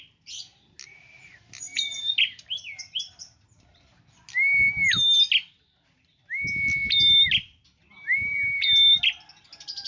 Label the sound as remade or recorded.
recorded